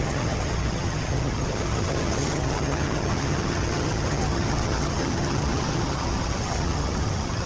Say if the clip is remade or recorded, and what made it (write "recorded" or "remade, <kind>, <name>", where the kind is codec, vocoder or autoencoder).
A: remade, vocoder, HiFi-GAN